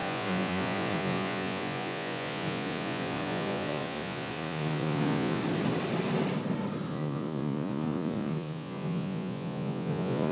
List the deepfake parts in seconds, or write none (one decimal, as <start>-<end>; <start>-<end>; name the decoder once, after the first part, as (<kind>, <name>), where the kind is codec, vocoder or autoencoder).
0.0-5.4 (vocoder, Vocos); 6.9-10.3